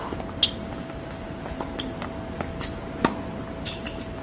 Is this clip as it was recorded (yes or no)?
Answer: yes